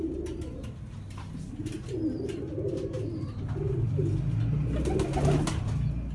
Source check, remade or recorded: recorded